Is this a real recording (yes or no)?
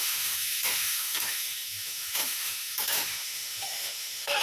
no